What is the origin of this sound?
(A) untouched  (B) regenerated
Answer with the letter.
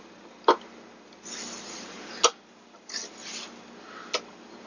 A